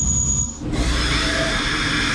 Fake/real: real